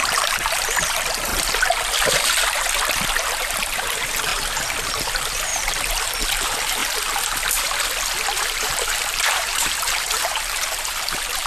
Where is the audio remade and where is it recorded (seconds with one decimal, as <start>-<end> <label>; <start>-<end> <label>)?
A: 0.0-1.3 remade; 1.3-3.3 recorded; 3.3-4.3 remade; 4.3-5.0 recorded; 5.0-5.5 remade; 5.5-6.3 recorded; 6.3-6.8 remade; 6.8-8.4 recorded; 8.4-11.5 remade